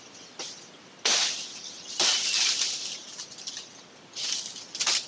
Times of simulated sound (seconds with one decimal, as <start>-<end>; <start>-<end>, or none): 2.1-4.6